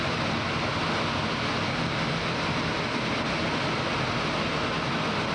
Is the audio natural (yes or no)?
yes